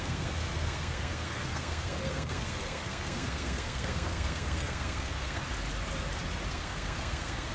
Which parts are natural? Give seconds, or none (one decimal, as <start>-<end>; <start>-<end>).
5.4-6.5